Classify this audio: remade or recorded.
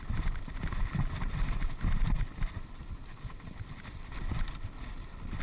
recorded